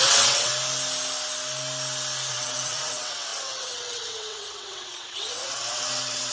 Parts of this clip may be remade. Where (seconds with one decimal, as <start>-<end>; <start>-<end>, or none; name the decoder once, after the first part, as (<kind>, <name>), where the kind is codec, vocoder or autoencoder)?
0.0-0.5 (vocoder, WaveNeXt); 2.3-6.3

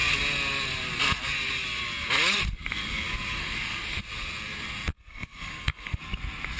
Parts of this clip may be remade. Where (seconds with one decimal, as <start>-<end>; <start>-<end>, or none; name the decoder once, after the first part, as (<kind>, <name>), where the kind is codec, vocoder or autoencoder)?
3.4-4.0 (codec, SNAC); 4.9-6.0

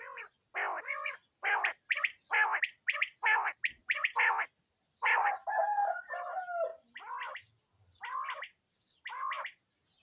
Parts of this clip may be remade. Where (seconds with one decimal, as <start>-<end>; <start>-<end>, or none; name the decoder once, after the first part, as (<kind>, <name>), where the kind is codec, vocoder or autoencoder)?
4.0-6.0 (vocoder, BigVGAN v2); 6.7-9.6

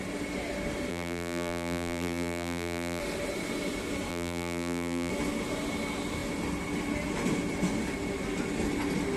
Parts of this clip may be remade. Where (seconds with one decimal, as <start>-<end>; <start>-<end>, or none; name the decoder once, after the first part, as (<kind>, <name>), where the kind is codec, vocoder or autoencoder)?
0.9-3.0 (vocoder, BigVGAN v2); 4.1-5.1

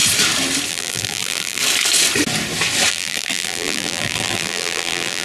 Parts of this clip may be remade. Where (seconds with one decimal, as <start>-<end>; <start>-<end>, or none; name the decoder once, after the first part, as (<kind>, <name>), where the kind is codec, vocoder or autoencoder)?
0.7-1.6 (vocoder, BigVGAN v2); 2.9-5.2

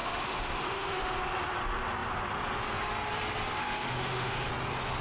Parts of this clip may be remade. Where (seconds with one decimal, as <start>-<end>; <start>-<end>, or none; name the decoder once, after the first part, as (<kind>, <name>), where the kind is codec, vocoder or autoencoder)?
0.0-1.1 (autoencoder, DAC-VAE); 3.6-4.5